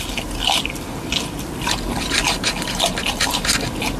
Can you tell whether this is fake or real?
real